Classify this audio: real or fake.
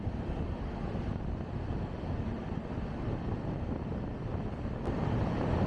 real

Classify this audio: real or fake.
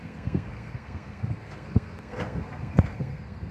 fake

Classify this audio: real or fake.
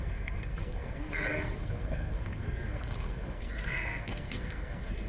fake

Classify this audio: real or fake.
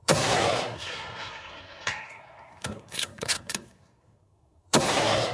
fake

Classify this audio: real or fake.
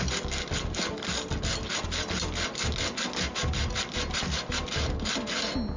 real